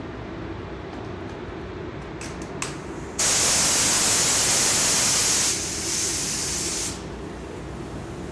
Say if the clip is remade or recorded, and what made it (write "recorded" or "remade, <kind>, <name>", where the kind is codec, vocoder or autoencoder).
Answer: recorded